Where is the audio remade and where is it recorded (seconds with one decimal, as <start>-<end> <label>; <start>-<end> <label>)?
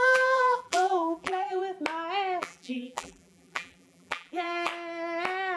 0.0-1.6 remade; 1.6-2.4 recorded; 2.4-4.7 remade; 4.7-5.6 recorded